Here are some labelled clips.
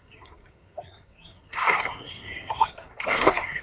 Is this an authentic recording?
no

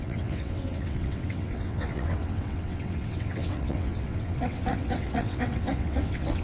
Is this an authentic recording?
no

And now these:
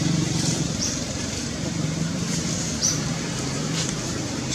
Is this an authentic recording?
no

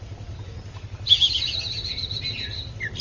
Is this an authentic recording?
no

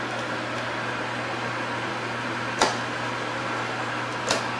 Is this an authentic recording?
yes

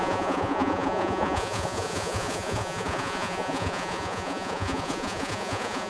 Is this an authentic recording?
no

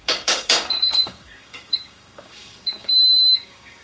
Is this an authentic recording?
no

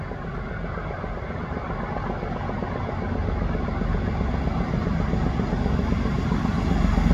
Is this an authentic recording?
yes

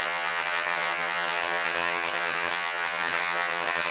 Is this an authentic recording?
no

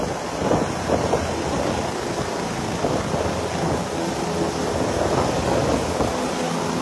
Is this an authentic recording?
yes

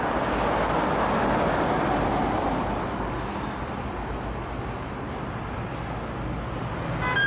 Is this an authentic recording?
yes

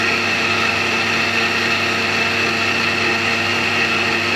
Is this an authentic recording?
yes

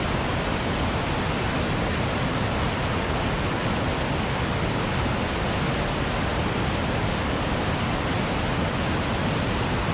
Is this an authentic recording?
yes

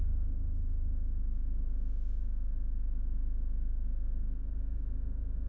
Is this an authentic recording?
no